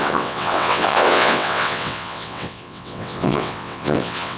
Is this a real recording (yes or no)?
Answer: no